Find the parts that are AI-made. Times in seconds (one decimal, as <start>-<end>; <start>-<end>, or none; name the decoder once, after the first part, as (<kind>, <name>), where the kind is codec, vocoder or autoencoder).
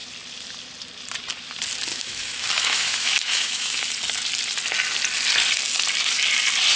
1.9-3.9 (autoencoder, DAC-VAE)